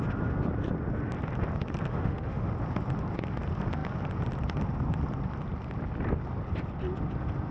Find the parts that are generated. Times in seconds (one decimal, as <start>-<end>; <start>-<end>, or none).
1.9-2.5